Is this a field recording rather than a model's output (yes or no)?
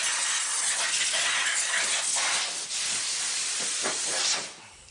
yes